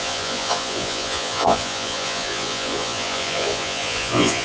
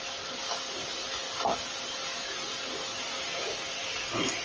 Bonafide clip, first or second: second